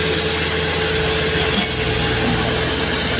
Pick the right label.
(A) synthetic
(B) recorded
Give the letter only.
B